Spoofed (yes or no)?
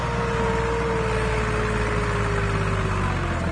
no